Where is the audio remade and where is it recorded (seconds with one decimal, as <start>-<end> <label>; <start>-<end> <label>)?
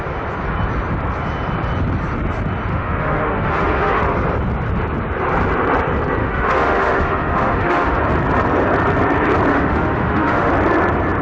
0.0-2.7 recorded; 2.7-4.0 remade; 4.0-6.2 recorded; 6.2-8.0 remade; 8.0-9.5 recorded; 9.5-10.5 remade; 10.5-11.2 recorded